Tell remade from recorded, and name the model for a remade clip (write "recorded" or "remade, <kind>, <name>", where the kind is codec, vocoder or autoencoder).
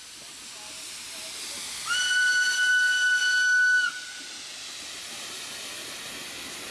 recorded